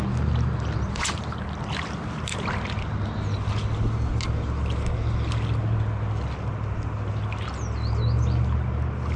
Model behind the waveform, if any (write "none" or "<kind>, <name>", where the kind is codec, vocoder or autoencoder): none